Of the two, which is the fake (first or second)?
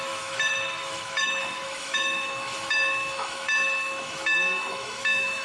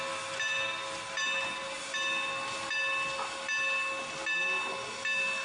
first